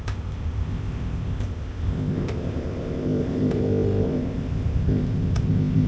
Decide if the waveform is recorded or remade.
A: remade